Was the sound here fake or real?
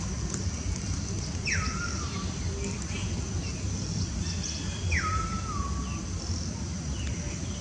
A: real